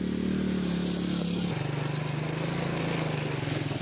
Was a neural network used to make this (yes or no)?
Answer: no